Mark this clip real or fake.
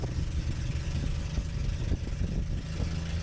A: real